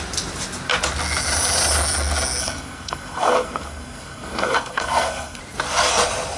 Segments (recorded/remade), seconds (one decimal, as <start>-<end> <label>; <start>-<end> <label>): 0.0-2.4 recorded; 2.4-5.4 remade; 5.4-6.4 recorded